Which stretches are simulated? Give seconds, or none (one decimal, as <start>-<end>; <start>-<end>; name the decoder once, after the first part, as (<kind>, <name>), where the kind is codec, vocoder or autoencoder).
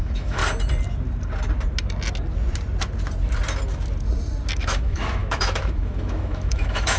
0.0-0.4 (autoencoder, DAC-VAE); 4.6-7.0